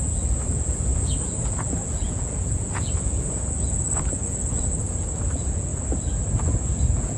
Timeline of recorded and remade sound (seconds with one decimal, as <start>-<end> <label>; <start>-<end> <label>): 0.0-5.7 remade; 5.7-6.4 recorded; 6.4-7.2 remade